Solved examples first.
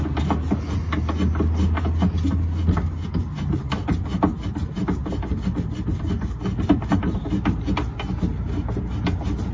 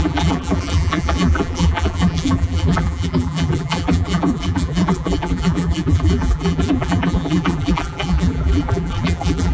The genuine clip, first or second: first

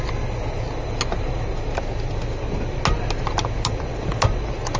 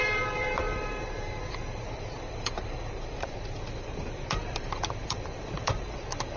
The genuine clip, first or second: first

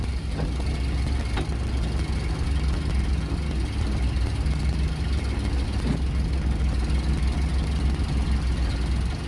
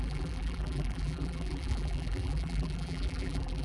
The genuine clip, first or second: first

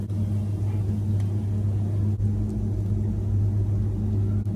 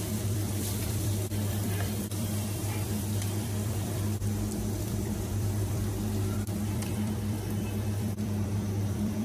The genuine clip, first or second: first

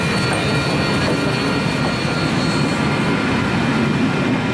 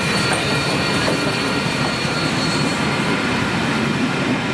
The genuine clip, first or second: first